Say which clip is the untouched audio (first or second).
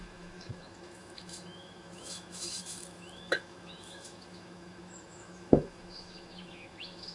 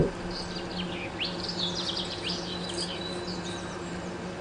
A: second